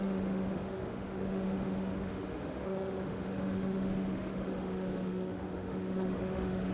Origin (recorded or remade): remade